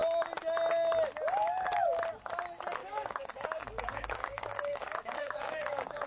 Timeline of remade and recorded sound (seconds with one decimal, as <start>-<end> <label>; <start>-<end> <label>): 0.0-1.4 recorded; 1.4-2.0 remade; 2.0-2.8 recorded; 2.8-6.1 remade